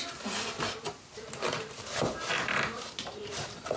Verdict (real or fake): fake